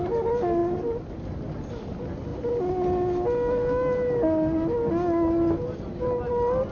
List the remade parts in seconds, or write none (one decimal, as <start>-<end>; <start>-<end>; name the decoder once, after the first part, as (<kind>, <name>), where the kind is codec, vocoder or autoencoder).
none

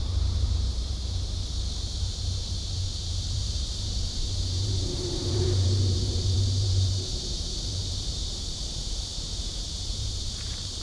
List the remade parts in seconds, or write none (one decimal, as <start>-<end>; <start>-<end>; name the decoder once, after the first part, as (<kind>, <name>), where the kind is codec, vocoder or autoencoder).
0.0-1.0 (vocoder, BigVGAN v2); 2.0-10.8

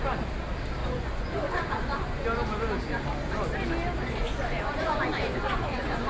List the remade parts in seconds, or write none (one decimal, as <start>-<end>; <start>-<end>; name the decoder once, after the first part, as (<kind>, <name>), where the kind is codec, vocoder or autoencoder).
0.8-2.2 (vocoder, Vocos); 4.2-6.1

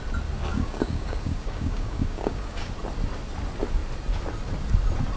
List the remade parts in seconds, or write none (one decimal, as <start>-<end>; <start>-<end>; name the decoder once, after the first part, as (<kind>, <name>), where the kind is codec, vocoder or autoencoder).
0.5-2.7 (codec, DAC)

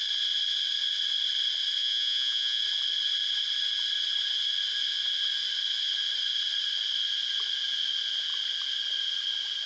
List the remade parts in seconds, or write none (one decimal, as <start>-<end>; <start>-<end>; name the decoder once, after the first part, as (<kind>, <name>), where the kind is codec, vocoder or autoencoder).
1.8-2.6 (vocoder, Vocos)

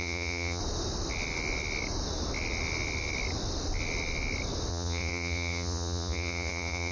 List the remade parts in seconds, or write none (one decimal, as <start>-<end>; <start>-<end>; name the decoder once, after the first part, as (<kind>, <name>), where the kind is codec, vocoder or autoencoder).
0.0-0.6 (vocoder, Vocos); 4.7-6.9

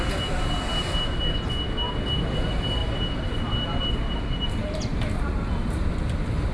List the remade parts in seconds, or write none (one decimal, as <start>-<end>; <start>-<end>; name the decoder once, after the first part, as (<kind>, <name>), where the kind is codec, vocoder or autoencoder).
4.6-5.9 (vocoder, BigVGAN v2)

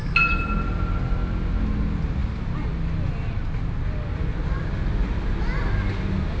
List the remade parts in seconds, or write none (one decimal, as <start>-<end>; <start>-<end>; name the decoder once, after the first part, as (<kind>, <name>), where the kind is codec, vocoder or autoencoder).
none